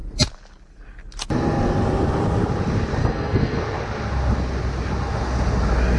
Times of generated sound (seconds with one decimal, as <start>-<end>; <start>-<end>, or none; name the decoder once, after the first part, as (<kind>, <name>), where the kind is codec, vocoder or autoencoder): 3.0-3.6 (codec, SNAC)